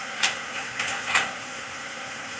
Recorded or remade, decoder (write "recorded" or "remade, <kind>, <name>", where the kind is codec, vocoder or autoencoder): remade, codec, SNAC